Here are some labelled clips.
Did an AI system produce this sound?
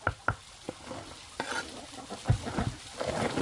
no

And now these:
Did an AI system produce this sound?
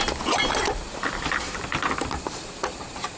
no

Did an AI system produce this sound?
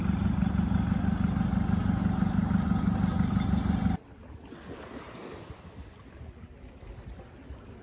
no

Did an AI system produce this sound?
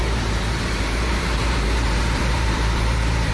yes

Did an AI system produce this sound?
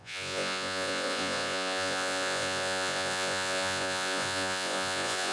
yes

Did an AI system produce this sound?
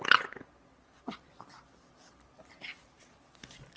no